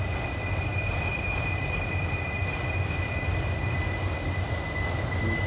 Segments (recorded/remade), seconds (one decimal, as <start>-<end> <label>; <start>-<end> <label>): 0.0-5.5 recorded